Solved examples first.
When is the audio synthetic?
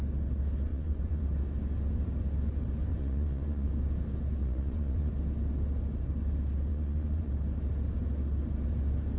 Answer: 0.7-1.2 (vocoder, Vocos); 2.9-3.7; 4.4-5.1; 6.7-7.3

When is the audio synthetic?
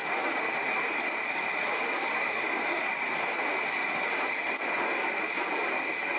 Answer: none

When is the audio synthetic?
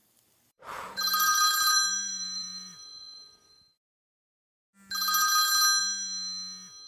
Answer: 0.0-4.1 (vocoder, BigVGAN v2)